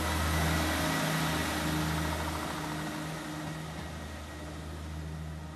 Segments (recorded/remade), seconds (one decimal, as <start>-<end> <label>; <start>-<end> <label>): 0.0-5.6 recorded